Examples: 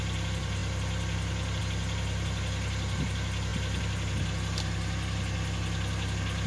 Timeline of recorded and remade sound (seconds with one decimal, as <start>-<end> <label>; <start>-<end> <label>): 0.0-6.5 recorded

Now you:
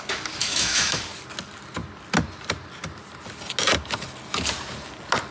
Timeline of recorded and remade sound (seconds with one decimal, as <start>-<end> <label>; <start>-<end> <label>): 0.0-0.4 recorded; 0.4-1.0 remade; 1.0-5.3 recorded

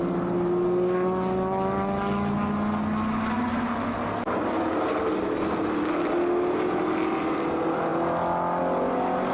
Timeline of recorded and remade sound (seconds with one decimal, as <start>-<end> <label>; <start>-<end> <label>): 0.0-9.3 recorded